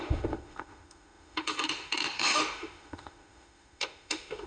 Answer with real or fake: fake